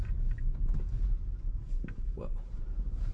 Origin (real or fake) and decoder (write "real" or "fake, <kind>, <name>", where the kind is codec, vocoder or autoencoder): fake, vocoder, BigVGAN v2